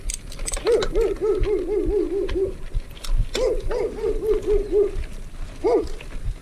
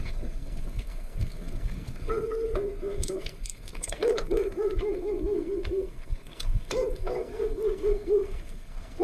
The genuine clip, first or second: first